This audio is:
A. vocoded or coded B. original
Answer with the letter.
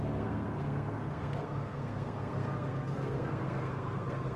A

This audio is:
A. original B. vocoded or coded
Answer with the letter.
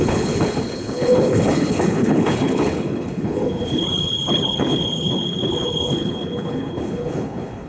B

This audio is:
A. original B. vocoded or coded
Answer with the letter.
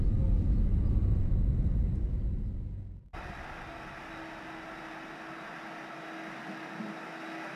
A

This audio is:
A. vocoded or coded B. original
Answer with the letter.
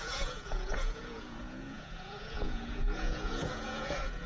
A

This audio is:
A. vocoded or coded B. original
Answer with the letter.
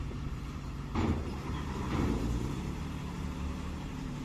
A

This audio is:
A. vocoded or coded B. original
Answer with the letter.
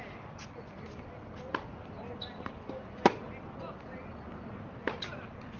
B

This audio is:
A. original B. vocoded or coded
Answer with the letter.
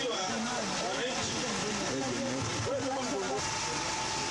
A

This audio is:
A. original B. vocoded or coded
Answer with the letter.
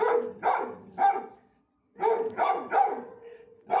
A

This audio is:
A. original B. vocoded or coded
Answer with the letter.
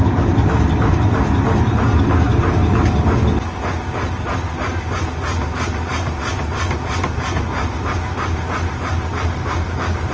A